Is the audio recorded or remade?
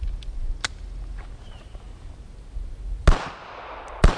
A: recorded